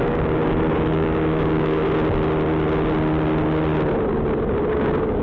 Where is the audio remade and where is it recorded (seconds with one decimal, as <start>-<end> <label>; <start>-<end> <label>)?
0.0-1.8 remade; 1.8-4.7 recorded; 4.7-5.2 remade